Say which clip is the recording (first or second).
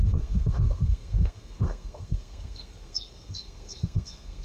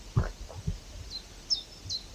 second